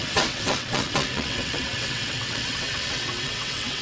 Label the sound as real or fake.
fake